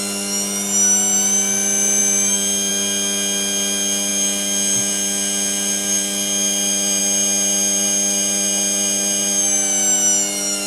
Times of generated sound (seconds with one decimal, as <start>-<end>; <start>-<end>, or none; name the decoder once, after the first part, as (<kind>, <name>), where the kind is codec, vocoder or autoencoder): none